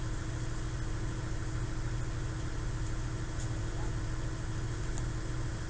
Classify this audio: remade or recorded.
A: recorded